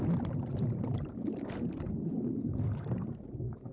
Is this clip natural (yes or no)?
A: yes